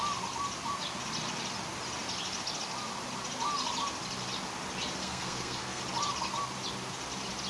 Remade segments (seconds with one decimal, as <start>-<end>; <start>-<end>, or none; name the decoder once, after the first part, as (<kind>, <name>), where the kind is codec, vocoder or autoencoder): 5.0-5.8 (codec, SNAC)